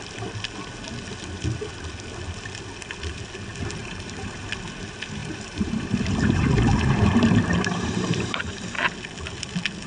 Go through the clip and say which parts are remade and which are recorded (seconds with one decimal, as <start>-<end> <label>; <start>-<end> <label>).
0.0-3.8 recorded; 3.8-4.4 remade; 4.4-5.2 recorded; 5.2-8.5 remade; 8.5-9.9 recorded